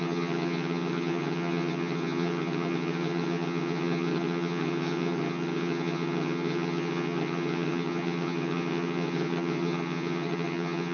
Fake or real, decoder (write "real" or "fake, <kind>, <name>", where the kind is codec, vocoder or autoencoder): fake, vocoder, HiFi-GAN